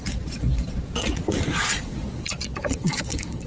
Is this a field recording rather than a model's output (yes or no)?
no